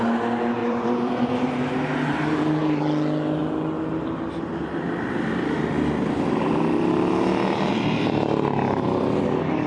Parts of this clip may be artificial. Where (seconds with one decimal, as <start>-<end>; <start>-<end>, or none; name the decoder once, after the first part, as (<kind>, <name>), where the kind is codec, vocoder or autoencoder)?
0.6-2.8 (vocoder, BigVGAN v2)